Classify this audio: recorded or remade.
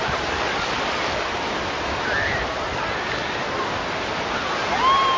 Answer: recorded